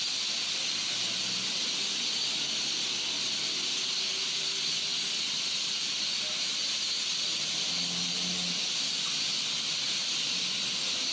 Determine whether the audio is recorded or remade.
recorded